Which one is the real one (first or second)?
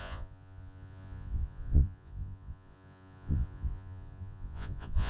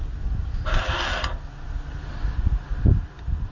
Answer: second